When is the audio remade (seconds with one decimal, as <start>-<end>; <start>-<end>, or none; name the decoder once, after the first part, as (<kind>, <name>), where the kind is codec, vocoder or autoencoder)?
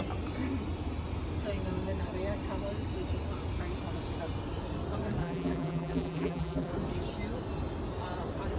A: 5.2-6.7 (vocoder, BigVGAN v2)